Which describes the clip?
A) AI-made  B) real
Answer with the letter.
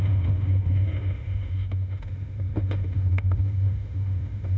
A